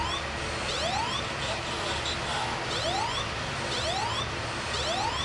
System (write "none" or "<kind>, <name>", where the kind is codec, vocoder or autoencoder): none